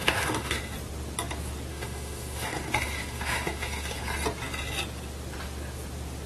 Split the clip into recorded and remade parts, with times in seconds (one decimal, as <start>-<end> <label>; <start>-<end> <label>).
0.0-0.6 remade; 0.6-1.7 recorded; 1.7-4.0 remade; 4.0-6.3 recorded